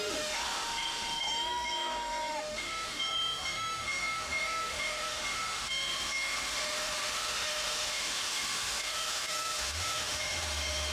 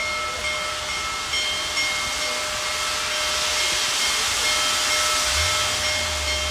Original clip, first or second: second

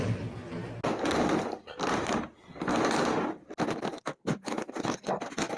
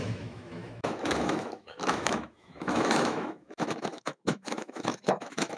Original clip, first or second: first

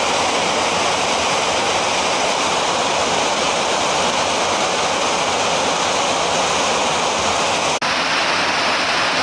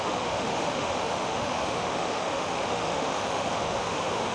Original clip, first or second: first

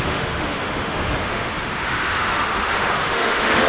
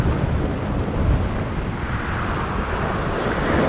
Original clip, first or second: second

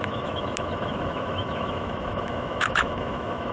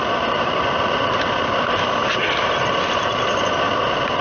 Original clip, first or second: second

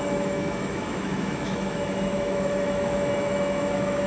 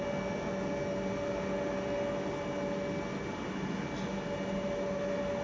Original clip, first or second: second